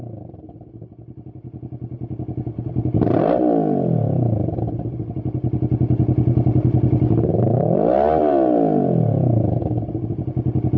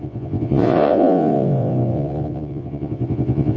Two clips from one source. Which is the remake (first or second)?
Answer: second